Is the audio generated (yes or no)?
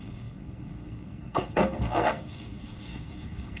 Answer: yes